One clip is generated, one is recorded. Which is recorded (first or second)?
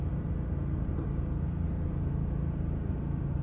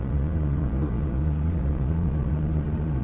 first